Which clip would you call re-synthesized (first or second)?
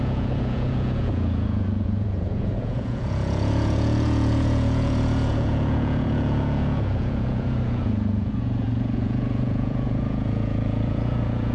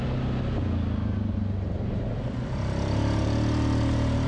first